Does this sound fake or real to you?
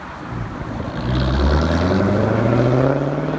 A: real